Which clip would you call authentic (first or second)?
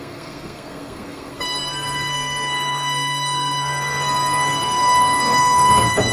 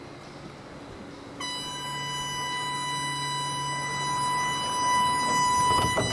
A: second